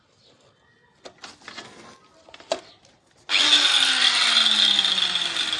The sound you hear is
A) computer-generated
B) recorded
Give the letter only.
B